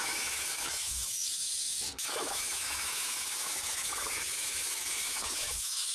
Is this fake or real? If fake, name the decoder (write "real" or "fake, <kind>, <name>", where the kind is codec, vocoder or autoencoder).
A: fake, autoencoder, DAC-VAE